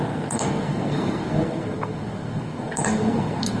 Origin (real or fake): fake